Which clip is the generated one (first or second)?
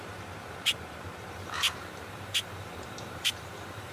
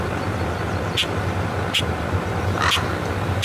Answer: first